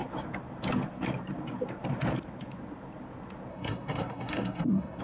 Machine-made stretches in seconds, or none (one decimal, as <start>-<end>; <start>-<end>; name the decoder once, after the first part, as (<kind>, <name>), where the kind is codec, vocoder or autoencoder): 3.5-5.0 (codec, SNAC)

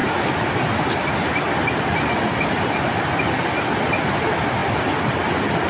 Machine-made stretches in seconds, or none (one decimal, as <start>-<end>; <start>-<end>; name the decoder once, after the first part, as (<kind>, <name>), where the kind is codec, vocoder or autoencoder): none

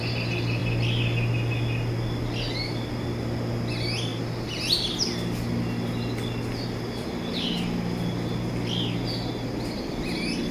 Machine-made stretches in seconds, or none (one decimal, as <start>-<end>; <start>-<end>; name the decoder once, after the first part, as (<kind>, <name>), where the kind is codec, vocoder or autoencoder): none

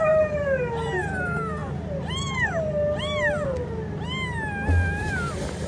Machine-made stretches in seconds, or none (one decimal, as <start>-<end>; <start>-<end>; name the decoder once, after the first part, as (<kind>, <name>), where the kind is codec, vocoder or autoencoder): none

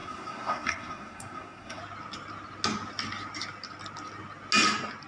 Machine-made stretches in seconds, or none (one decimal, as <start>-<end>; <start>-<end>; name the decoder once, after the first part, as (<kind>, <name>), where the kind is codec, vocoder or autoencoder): 0.0-1.8 (codec, SNAC)

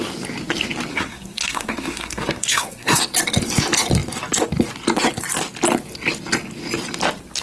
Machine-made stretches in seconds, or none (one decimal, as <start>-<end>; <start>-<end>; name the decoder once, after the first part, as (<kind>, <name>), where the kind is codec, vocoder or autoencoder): 0.9-3.0 (codec, SNAC)

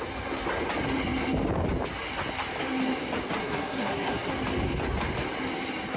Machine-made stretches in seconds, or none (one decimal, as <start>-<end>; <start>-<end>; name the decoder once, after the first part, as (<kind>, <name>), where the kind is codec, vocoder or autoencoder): 3.4-4.3 (codec, SNAC)